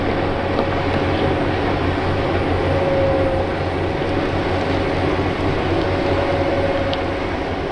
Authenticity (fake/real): real